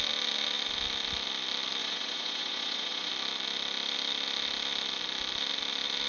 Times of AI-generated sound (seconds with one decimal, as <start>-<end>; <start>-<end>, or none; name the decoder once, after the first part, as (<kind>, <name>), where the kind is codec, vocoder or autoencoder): 1.8-3.1 (vocoder, Vocos)